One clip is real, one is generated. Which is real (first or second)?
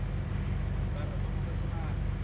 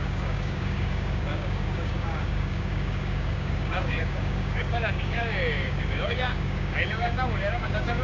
first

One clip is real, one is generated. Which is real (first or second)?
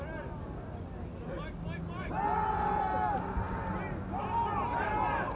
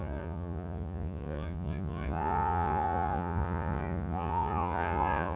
first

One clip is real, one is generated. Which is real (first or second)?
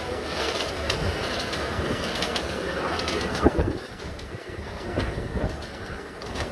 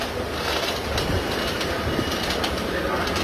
second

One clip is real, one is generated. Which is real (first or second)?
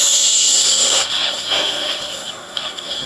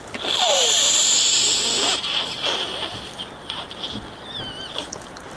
second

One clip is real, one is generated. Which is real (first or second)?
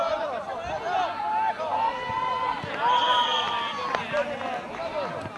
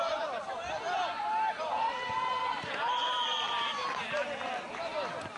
first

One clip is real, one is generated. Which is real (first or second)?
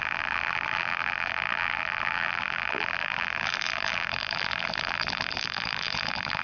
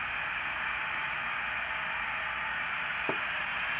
second